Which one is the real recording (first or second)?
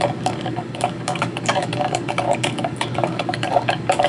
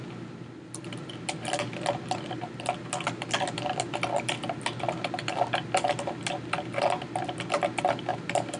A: second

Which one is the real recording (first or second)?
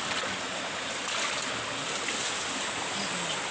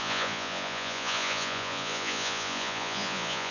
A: first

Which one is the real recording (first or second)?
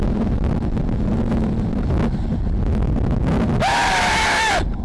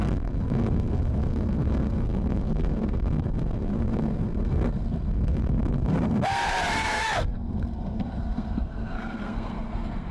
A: first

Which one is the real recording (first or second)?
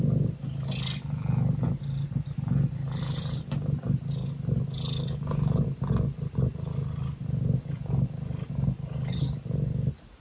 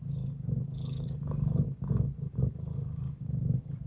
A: first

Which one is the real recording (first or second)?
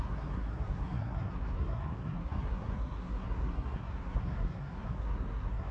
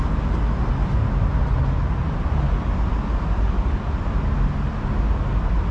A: second